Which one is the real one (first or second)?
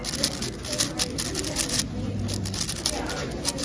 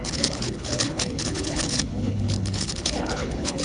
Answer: first